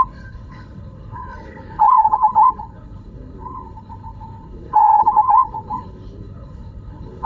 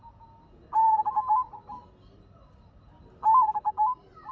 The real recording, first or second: second